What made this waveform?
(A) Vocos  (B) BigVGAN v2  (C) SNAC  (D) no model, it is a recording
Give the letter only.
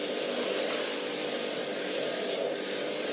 B